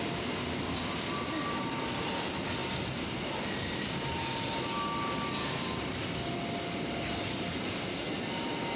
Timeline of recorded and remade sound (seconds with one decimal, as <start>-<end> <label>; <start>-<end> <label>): 0.0-8.8 recorded